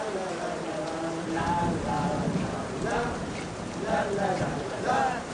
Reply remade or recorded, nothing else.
remade